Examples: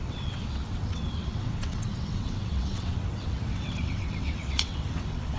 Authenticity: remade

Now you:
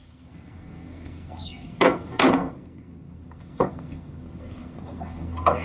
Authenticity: remade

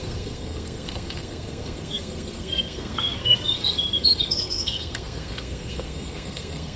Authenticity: remade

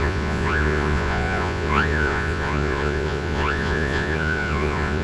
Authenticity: remade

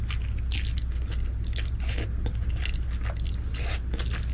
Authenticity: recorded